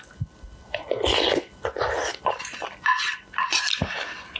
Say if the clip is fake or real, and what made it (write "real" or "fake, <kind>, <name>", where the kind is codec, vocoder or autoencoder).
real